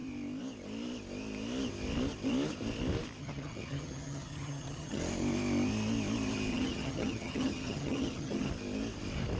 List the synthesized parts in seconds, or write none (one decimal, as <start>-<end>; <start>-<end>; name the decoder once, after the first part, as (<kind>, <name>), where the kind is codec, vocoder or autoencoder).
3.2-5.0 (vocoder, HiFi-GAN); 6.5-8.5